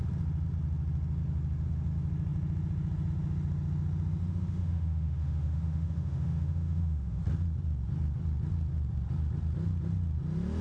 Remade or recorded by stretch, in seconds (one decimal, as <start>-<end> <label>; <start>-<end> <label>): 0.0-4.2 recorded; 4.2-7.2 remade; 7.2-10.6 recorded